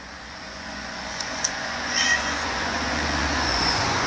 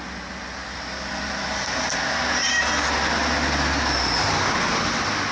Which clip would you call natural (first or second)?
second